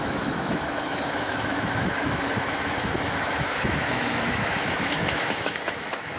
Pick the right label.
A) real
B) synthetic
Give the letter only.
B